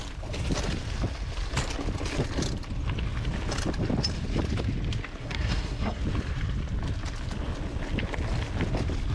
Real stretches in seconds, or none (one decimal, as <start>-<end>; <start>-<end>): 0.0-5.2; 6.0-9.1